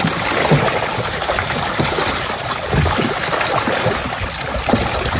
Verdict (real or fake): real